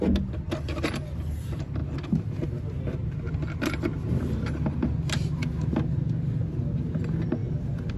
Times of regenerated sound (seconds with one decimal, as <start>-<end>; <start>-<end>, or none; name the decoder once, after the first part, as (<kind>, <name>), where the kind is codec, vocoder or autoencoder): 7.4-8.0 (vocoder, BigVGAN v2)